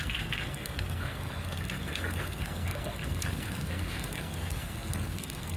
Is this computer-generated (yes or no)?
yes